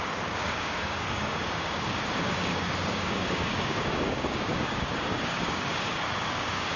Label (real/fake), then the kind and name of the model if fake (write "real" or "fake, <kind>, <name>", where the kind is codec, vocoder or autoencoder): fake, codec, DAC